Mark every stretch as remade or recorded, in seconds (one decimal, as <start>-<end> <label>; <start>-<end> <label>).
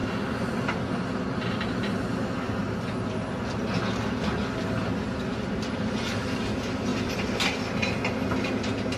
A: 0.0-1.2 remade; 1.2-4.4 recorded; 4.4-5.9 remade; 5.9-9.0 recorded